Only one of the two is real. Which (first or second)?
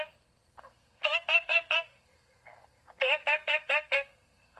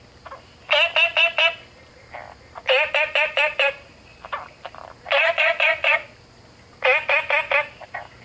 second